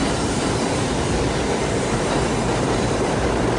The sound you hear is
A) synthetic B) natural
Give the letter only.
A